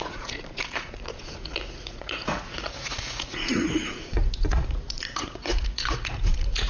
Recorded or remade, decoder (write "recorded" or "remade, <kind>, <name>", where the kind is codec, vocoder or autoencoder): remade, vocoder, Vocos